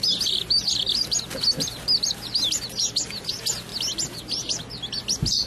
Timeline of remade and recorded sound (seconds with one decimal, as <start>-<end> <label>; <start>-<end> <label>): 0.0-5.5 recorded